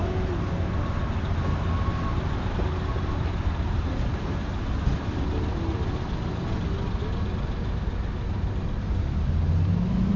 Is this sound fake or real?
real